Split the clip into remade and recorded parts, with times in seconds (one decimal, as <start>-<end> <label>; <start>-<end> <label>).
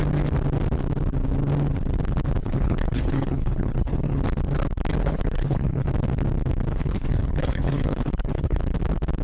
0.0-2.4 recorded; 2.4-4.2 remade; 4.2-5.0 recorded; 5.0-5.9 remade; 5.9-6.7 recorded; 6.7-8.6 remade; 8.6-9.2 recorded